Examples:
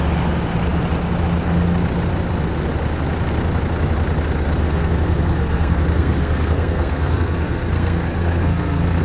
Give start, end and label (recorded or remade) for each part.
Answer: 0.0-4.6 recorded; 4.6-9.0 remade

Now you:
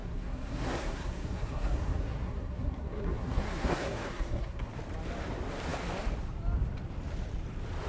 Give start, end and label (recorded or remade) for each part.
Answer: 0.0-4.7 remade; 4.7-7.9 recorded

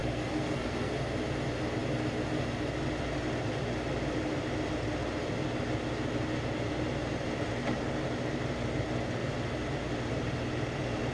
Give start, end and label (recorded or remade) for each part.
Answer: 0.0-0.9 remade; 0.9-11.1 recorded

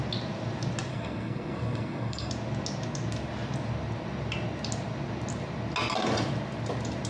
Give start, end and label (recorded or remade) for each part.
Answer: 0.0-0.9 recorded; 0.9-2.3 remade; 2.3-7.1 recorded